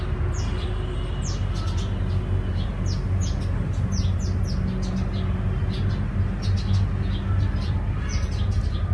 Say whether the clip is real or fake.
real